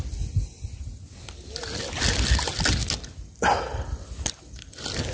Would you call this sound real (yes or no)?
yes